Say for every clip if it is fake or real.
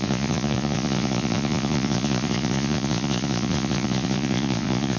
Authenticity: fake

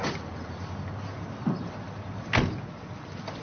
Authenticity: real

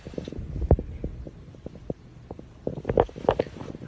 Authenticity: real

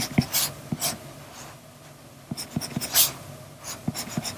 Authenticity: real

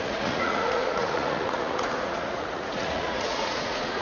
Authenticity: fake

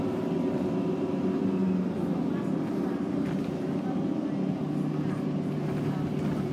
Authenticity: real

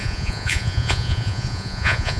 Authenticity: fake